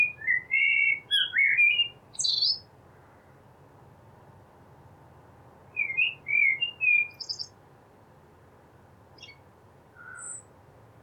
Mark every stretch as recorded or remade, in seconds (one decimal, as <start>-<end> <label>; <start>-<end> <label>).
0.0-11.0 recorded